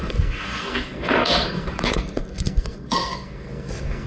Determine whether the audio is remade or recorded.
remade